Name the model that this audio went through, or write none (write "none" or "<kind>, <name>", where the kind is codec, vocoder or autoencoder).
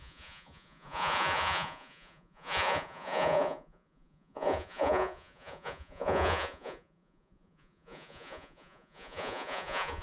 vocoder, Vocos